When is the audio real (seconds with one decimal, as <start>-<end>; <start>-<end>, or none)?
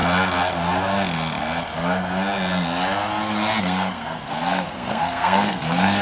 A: 0.0-3.6